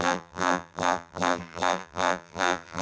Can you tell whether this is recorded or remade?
remade